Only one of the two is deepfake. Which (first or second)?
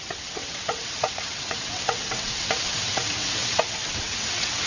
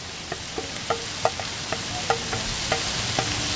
first